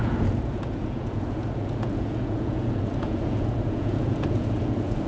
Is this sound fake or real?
fake